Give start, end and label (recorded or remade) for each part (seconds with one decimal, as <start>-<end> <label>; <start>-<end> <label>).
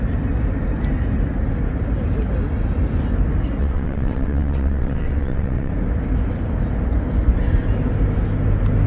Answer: 0.0-3.6 recorded; 3.6-5.7 remade; 5.7-8.9 recorded